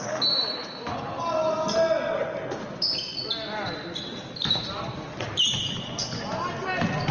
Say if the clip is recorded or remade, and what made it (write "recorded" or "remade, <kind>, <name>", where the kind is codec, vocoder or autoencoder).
recorded